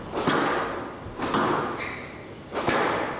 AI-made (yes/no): no